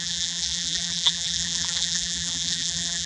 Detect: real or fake fake